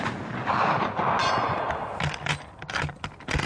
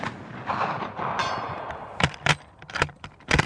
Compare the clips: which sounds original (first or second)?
first